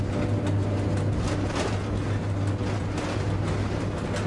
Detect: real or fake real